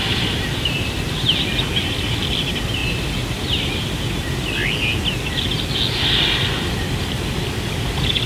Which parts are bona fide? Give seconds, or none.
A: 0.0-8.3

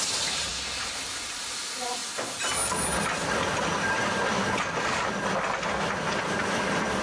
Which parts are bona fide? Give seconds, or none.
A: 0.5-1.1; 2.0-6.2

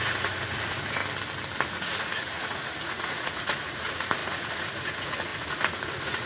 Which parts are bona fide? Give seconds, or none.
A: 1.0-1.7

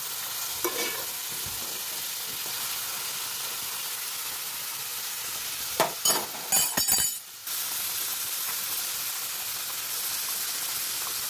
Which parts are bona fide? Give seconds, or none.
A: 0.0-4.9; 6.1-7.4; 8.6-11.3

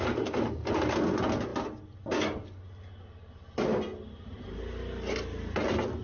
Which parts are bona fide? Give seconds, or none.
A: 0.0-6.0

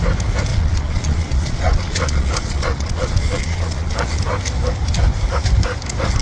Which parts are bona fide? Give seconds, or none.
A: 0.0-0.5; 4.2-6.2